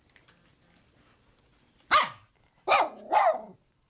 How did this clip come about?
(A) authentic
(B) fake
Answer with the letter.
A